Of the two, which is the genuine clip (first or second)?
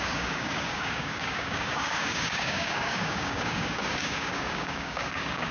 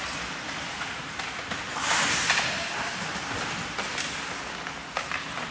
second